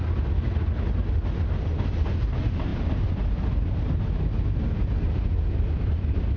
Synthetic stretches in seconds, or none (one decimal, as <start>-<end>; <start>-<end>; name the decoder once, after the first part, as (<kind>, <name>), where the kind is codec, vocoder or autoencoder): none